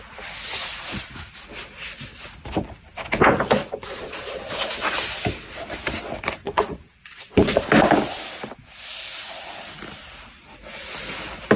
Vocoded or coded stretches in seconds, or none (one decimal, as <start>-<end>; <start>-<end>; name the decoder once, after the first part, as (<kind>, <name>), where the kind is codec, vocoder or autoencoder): 3.6-4.4 (vocoder, Vocos); 6.4-7.6